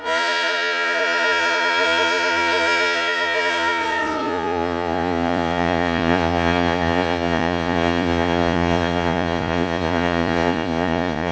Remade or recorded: remade